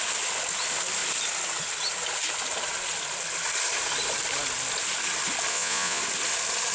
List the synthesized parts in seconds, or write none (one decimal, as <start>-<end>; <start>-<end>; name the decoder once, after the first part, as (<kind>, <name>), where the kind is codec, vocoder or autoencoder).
5.5-6.0 (vocoder, Vocos)